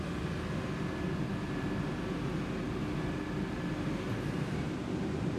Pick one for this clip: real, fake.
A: real